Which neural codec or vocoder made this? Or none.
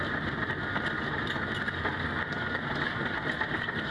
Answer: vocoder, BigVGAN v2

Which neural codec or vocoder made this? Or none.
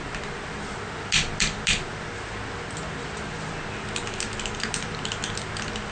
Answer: none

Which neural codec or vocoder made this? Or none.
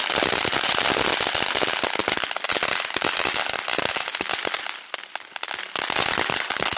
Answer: none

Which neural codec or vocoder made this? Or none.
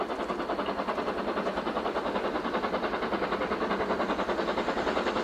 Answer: none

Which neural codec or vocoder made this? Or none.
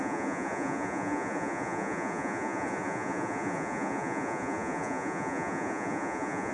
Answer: vocoder, Vocos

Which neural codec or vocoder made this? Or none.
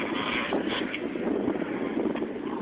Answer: none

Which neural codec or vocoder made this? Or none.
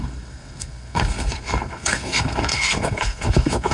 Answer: codec, SNAC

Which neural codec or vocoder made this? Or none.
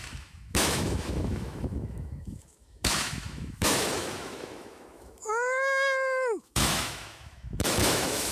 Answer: autoencoder, DAC-VAE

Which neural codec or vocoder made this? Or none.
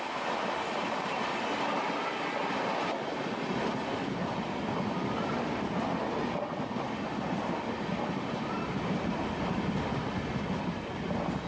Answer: none